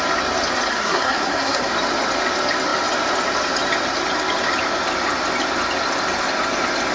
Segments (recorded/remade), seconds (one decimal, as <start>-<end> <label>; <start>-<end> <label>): 0.0-0.7 recorded; 0.7-1.7 remade; 1.7-6.9 recorded

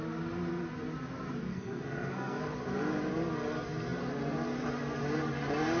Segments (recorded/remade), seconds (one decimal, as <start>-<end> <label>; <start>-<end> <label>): 0.0-1.5 recorded; 1.5-2.4 remade; 2.4-5.8 recorded

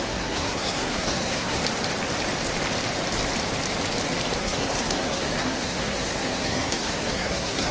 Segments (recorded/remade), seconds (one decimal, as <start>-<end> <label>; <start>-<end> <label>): 0.0-1.6 remade; 1.6-4.4 recorded; 4.4-7.7 remade